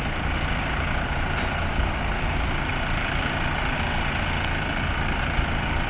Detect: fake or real real